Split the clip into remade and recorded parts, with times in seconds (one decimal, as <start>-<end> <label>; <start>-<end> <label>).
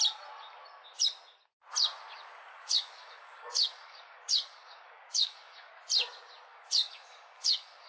0.0-2.5 recorded; 2.5-5.7 remade; 5.7-6.5 recorded; 6.5-7.9 remade